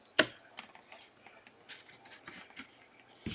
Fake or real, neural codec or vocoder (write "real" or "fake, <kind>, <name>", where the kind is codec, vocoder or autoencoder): real